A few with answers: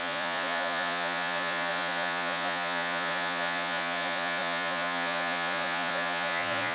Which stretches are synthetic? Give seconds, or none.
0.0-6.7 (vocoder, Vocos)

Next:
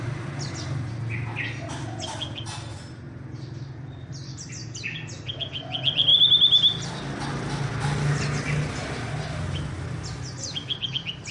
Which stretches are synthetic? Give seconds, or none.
none

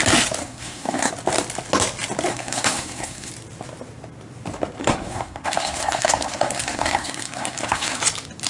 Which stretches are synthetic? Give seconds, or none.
0.4-1.1 (codec, SNAC); 2.3-3.3; 4.8-8.0